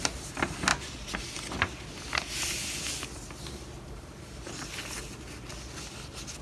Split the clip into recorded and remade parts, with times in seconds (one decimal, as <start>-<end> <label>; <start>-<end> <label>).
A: 0.0-6.4 recorded